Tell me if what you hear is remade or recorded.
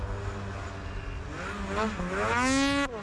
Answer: recorded